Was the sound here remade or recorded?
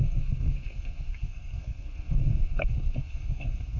remade